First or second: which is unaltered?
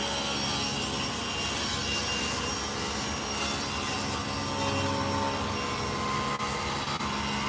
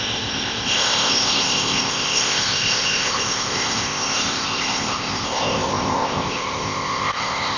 first